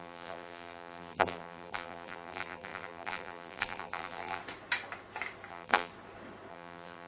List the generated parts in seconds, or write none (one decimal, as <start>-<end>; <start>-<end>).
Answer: 0.0-4.4; 5.5-5.9; 6.5-7.1